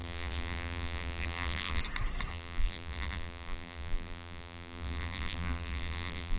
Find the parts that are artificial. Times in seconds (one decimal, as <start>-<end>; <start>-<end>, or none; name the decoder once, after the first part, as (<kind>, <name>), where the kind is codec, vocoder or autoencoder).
0.0-1.8 (vocoder, BigVGAN v2); 2.3-6.4